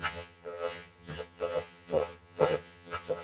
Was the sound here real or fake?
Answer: fake